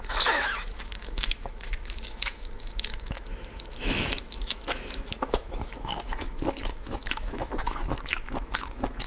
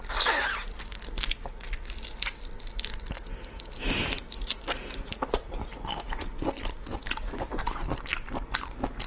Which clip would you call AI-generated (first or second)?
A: first